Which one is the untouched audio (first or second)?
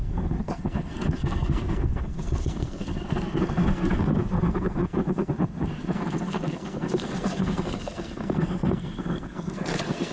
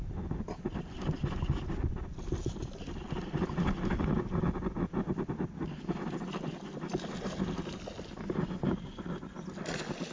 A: second